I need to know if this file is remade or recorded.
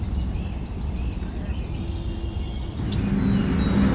recorded